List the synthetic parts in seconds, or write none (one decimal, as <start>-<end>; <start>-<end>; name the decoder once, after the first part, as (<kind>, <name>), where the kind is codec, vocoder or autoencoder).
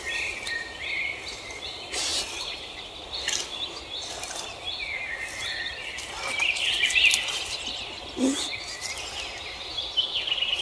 none